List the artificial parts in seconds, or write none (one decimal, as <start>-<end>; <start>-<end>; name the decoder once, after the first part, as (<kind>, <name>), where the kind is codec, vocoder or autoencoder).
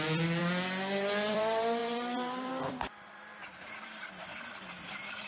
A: 0.0-0.4 (vocoder, BigVGAN v2); 1.3-3.3; 4.5-5.3